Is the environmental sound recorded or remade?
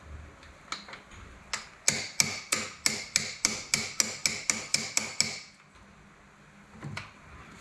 recorded